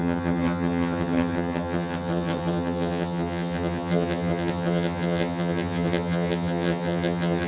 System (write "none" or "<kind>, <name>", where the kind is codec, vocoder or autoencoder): vocoder, HiFi-GAN